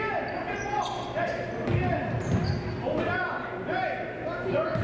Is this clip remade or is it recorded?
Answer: recorded